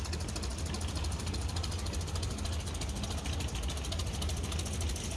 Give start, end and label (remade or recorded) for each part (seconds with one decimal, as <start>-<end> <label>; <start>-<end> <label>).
0.0-5.2 recorded